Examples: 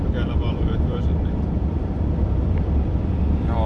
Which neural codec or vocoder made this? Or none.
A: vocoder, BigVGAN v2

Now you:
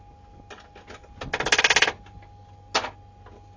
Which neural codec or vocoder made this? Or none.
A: none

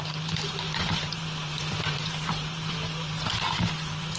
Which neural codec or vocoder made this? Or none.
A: vocoder, BigVGAN v2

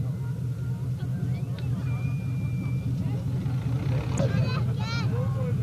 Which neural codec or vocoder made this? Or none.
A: none